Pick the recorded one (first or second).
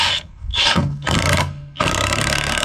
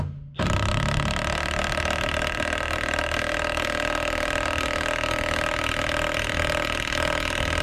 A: second